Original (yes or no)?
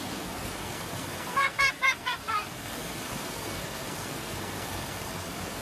no